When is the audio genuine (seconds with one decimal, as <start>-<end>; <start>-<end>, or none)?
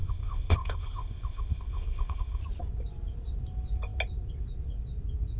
2.4-5.4